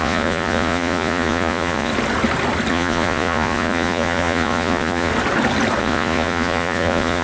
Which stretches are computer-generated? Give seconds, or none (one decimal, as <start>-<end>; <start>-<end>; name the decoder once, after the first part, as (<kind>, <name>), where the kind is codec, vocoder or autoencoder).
0.0-1.9 (vocoder, Vocos); 2.7-5.1; 5.8-7.2